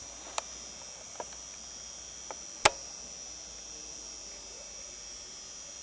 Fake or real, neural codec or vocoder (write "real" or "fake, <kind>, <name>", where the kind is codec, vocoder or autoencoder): real